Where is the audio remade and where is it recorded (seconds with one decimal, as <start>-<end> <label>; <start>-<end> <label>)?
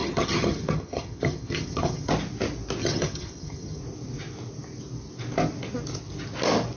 0.0-2.1 remade; 2.1-2.8 recorded; 2.8-3.8 remade; 3.8-6.8 recorded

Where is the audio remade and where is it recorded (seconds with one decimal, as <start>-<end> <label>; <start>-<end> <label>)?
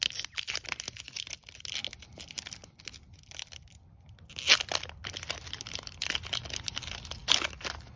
0.0-8.0 recorded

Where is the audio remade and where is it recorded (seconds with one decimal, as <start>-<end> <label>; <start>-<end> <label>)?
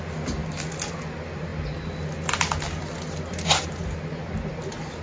0.0-5.0 recorded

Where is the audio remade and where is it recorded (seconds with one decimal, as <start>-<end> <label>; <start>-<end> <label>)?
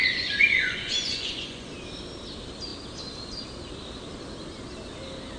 0.0-1.7 remade; 1.7-5.4 recorded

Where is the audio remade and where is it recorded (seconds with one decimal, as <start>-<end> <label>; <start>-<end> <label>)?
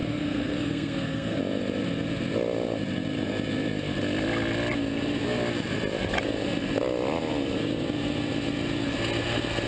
0.0-1.4 remade; 1.4-9.7 recorded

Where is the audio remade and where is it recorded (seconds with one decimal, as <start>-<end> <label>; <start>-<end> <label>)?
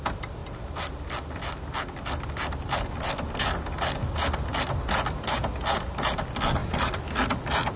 0.0-7.8 recorded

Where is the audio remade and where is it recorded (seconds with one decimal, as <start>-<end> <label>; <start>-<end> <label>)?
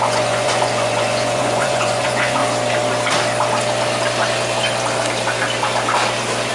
0.0-2.4 remade; 2.4-6.5 recorded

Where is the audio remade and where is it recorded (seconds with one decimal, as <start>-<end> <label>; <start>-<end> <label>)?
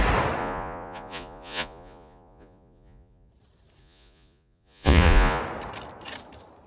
0.0-0.4 recorded; 0.4-3.3 remade; 3.3-3.8 recorded; 3.8-5.4 remade; 5.4-6.7 recorded